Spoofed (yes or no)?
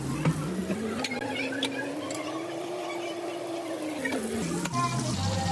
no